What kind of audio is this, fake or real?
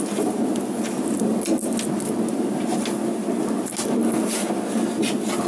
real